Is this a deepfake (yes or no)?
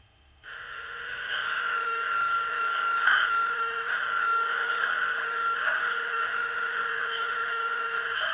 yes